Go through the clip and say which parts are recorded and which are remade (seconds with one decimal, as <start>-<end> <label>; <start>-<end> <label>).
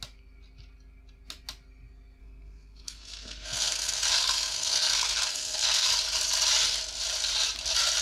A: 0.0-2.2 recorded; 2.2-5.9 remade; 5.9-8.0 recorded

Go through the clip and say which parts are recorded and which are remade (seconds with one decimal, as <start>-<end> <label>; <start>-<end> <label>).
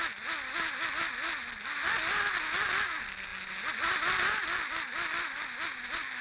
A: 0.0-6.2 recorded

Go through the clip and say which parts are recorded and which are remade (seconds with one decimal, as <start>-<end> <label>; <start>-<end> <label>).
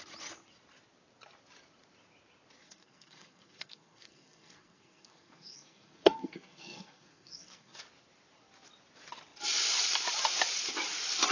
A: 0.0-2.6 recorded; 2.6-7.8 remade; 7.8-11.3 recorded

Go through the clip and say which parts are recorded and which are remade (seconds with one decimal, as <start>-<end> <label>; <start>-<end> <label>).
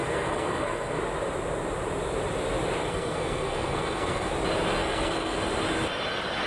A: 0.0-1.0 remade; 1.0-2.8 recorded; 2.8-4.3 remade; 4.3-4.8 recorded; 4.8-5.4 remade; 5.4-6.5 recorded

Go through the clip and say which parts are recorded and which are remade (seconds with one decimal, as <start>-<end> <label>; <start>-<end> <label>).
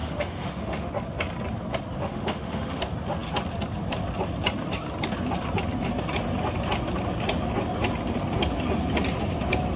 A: 0.0-0.9 remade; 0.9-2.0 recorded; 2.0-2.8 remade; 2.8-9.8 recorded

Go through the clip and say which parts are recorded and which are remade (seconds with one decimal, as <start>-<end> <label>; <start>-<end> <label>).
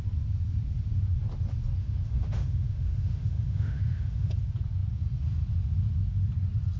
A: 0.0-1.8 recorded; 1.8-4.3 remade; 4.3-6.8 recorded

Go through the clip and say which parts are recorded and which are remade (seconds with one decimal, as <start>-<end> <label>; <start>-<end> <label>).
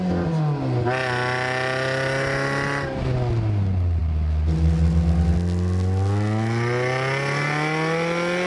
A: 0.0-8.5 recorded